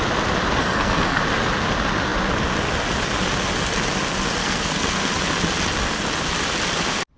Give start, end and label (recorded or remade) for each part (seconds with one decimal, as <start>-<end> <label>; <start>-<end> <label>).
0.0-0.6 recorded; 0.6-1.2 remade; 1.2-4.4 recorded; 4.4-5.1 remade; 5.1-7.2 recorded